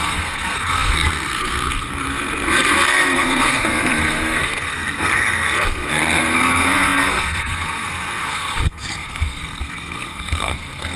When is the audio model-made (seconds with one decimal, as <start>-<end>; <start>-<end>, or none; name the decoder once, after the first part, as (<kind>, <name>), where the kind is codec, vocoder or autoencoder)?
0.0-11.0 (codec, SNAC)